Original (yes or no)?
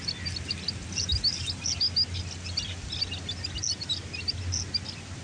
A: yes